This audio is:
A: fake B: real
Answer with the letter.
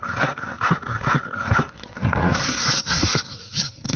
A